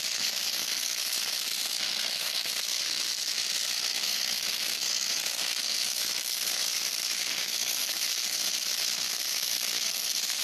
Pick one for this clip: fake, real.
fake